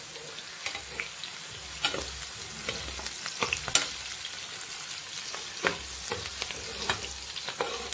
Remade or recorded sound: recorded